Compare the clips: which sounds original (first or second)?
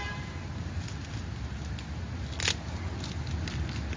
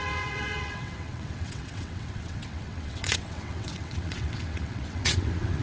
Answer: first